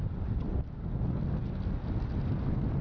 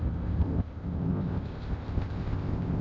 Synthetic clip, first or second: second